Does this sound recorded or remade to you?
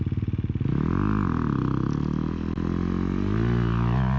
recorded